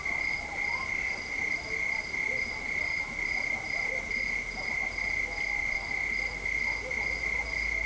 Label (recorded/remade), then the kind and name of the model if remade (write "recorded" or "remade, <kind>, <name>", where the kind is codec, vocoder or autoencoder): recorded